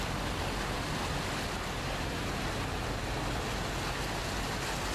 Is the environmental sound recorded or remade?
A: recorded